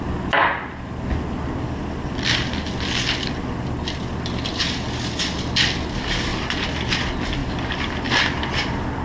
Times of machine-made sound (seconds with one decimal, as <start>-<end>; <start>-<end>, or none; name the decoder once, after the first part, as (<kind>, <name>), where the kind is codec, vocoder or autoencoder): 6.3-7.0 (vocoder, BigVGAN v2)

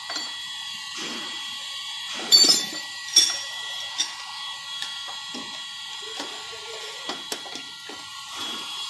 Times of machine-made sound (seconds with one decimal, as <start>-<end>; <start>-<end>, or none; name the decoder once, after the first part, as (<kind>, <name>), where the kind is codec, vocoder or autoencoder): 0.4-3.8 (vocoder, BigVGAN v2); 5.8-7.0; 8.1-8.9

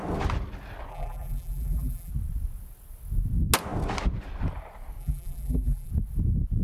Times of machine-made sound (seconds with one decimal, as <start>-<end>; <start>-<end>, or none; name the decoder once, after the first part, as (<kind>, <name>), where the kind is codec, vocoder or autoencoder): 0.9-2.1 (vocoder, BigVGAN v2); 5.0-5.9

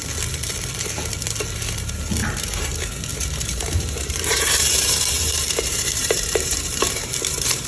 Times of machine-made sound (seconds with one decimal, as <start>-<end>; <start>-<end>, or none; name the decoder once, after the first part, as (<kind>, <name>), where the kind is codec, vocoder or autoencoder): 2.2-2.7 (vocoder, BigVGAN v2); 3.1-7.7

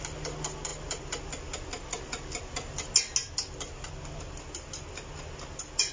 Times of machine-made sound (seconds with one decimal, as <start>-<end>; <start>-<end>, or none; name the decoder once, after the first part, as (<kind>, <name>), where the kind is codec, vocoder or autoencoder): none

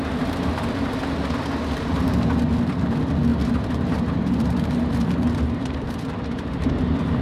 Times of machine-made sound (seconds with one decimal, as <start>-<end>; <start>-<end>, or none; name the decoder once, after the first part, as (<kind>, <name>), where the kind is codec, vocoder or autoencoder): 3.3-6.7 (vocoder, BigVGAN v2)

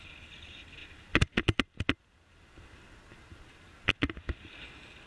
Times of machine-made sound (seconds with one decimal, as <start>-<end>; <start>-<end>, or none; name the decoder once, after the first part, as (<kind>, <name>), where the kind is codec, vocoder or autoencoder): none

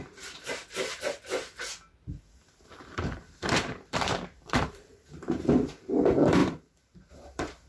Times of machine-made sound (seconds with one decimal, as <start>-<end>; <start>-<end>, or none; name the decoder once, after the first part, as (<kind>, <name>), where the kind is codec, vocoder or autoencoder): 0.0-0.6 (vocoder, BigVGAN v2); 2.5-7.7